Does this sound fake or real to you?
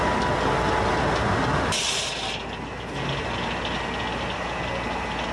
real